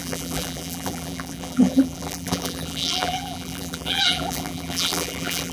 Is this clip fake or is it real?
fake